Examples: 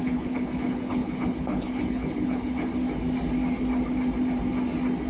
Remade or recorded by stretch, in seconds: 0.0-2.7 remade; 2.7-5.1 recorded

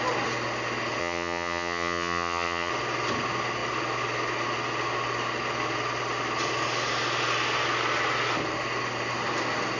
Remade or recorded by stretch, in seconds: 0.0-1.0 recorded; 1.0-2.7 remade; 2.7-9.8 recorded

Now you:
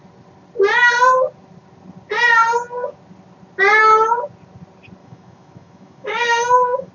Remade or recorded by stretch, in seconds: 0.0-5.0 recorded; 5.0-6.9 remade

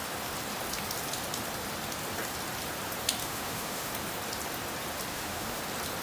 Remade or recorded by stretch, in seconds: 0.0-3.2 recorded; 3.2-3.9 remade; 3.9-5.1 recorded; 5.1-5.6 remade; 5.6-6.0 recorded

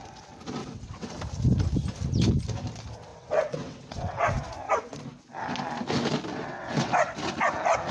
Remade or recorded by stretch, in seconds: 0.0-0.6 recorded; 0.6-1.2 remade; 1.2-3.1 recorded; 3.1-4.5 remade; 4.5-6.3 recorded; 6.3-6.9 remade; 6.9-7.9 recorded

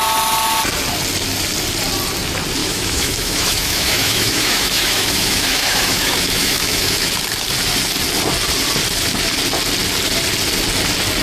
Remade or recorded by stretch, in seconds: 0.0-2.6 recorded; 2.6-7.1 remade; 7.1-11.2 recorded

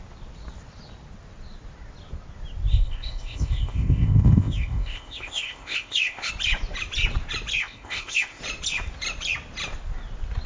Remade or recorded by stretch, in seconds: 0.0-2.7 recorded; 2.7-6.3 remade; 6.3-7.6 recorded; 7.6-8.4 remade; 8.4-10.5 recorded